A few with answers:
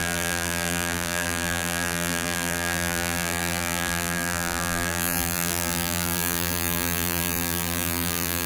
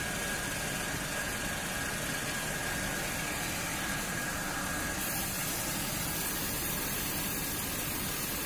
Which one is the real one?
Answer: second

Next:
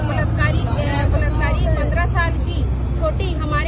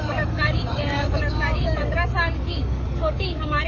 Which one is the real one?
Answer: first